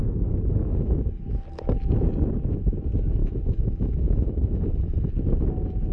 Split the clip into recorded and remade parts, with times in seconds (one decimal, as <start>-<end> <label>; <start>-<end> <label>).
0.0-1.2 remade; 1.2-3.2 recorded; 3.2-5.1 remade; 5.1-5.9 recorded